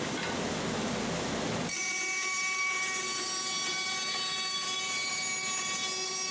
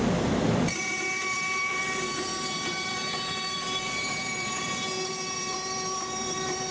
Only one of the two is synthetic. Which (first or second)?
second